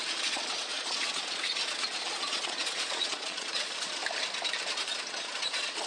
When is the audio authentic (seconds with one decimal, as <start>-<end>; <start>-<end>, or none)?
4.0-4.7